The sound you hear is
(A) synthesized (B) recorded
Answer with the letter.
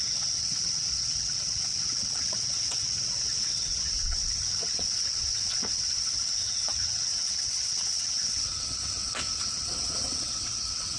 A